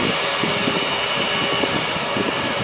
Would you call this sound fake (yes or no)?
no